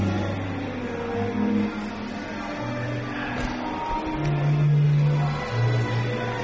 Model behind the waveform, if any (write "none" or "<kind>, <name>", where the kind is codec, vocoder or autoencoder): none